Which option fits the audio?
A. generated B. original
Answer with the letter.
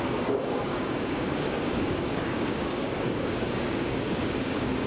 A